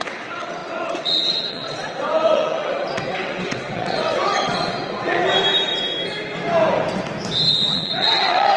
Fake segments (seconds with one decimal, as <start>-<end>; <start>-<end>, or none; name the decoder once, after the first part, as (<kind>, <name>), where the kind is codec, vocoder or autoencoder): 0.0-5.2 (vocoder, WaveNeXt); 7.5-8.6